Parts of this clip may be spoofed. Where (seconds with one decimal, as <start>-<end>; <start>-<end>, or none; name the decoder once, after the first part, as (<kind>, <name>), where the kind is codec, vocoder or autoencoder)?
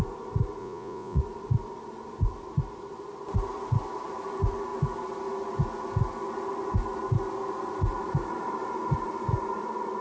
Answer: 0.6-1.2 (vocoder, Vocos)